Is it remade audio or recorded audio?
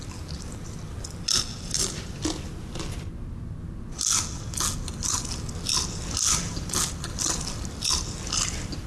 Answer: recorded